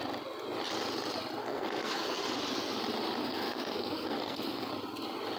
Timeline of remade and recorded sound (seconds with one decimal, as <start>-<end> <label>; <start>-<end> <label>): 0.0-1.4 recorded; 1.4-2.2 remade; 2.2-3.2 recorded; 3.2-4.7 remade; 4.7-5.4 recorded